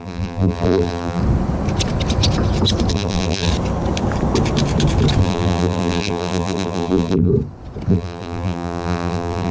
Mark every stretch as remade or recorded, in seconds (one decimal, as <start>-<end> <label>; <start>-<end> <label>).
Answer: 0.0-1.2 remade; 1.2-2.9 recorded; 2.9-3.5 remade; 3.5-5.2 recorded; 5.2-7.3 remade; 7.3-7.9 recorded; 7.9-9.5 remade